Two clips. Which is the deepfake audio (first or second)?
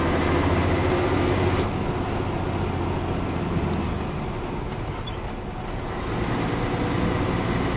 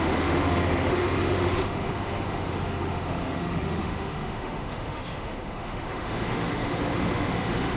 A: second